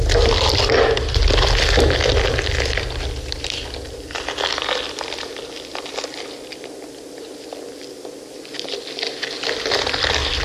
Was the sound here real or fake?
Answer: real